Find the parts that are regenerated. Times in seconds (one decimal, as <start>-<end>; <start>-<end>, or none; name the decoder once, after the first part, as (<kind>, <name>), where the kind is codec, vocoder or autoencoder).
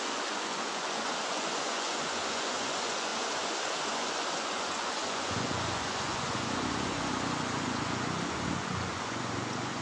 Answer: 0.0-9.8 (vocoder, Vocos)